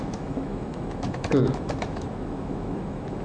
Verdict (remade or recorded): remade